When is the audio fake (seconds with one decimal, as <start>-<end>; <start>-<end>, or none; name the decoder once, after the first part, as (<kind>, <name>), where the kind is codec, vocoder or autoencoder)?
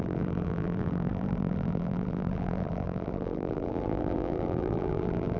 0.0-5.4 (vocoder, BigVGAN v2)